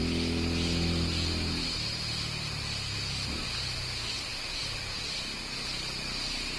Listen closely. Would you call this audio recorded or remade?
recorded